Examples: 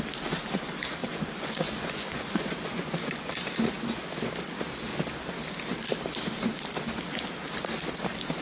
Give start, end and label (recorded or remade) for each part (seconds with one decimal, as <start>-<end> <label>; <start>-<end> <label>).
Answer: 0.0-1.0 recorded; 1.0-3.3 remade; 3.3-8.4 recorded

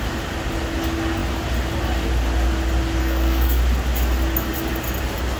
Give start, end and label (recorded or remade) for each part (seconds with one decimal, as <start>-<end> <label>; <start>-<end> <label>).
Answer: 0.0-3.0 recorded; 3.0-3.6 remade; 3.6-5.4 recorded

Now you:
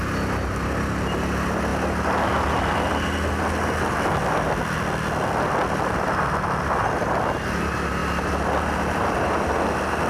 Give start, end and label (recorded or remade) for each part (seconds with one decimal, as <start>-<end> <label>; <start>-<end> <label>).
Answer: 0.0-10.1 recorded